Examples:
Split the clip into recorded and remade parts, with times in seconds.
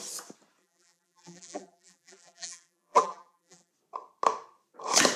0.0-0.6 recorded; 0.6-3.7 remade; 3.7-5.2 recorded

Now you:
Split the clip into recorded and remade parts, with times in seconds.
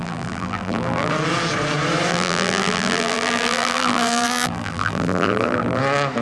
0.0-1.1 remade; 1.1-2.1 recorded; 2.1-5.8 remade; 5.8-6.2 recorded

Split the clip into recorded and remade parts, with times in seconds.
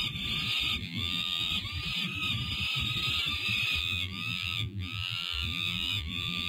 0.0-0.8 recorded; 0.8-1.5 remade; 1.5-3.8 recorded; 3.8-6.5 remade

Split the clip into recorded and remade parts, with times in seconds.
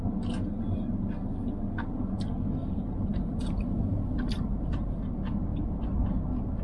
0.0-2.6 recorded; 2.6-5.0 remade; 5.0-5.5 recorded; 5.5-6.1 remade; 6.1-6.6 recorded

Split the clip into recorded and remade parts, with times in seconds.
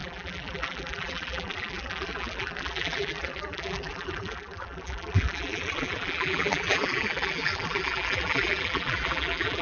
0.0-9.6 remade